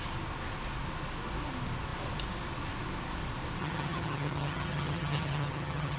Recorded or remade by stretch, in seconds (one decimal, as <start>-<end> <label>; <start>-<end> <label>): 0.0-3.6 recorded; 3.6-6.0 remade